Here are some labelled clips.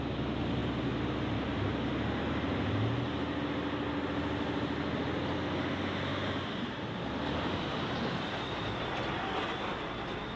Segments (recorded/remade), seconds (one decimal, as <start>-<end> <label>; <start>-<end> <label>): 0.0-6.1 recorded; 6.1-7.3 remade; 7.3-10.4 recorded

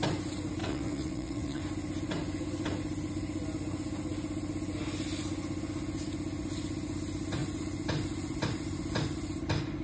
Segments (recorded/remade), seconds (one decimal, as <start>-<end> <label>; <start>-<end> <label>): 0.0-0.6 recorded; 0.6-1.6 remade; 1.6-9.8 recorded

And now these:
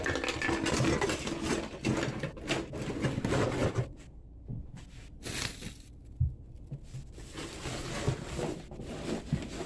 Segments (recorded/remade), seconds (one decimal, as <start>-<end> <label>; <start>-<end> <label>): 0.0-9.7 recorded

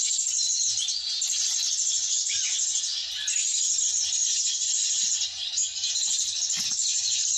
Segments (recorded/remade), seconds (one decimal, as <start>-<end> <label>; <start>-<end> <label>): 0.0-3.0 recorded; 3.0-5.5 remade; 5.5-6.8 recorded; 6.8-7.4 remade

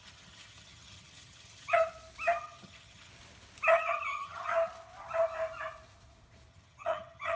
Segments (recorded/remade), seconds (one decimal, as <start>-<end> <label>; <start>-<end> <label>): 0.0-1.8 remade; 1.8-2.4 recorded; 2.4-3.1 remade; 3.1-3.7 recorded; 3.7-4.5 remade; 4.5-6.5 recorded; 6.5-7.4 remade